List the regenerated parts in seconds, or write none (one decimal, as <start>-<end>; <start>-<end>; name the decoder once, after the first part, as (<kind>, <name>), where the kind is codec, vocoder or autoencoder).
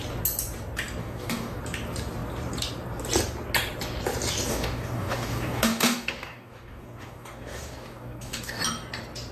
1.0-1.6 (codec, DAC); 4.5-8.6